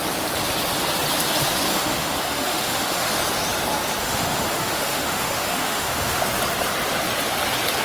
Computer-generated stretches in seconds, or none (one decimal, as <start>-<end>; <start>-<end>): 1.7-3.2; 4.0-6.2